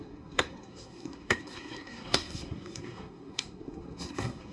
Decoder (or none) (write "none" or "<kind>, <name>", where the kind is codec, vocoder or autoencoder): codec, SNAC